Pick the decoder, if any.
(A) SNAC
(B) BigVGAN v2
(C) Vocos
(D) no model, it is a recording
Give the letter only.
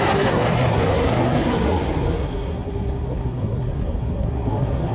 A